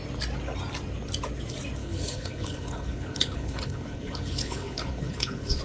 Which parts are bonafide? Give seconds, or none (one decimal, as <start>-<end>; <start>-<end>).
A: 0.0-1.8